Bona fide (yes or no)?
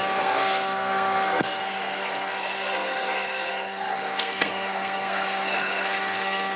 no